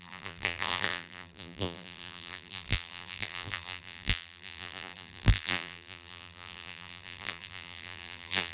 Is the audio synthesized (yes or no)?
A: yes